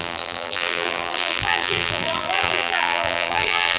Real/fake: fake